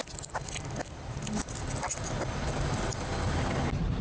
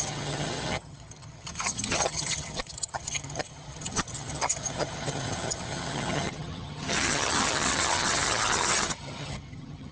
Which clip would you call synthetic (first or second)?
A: second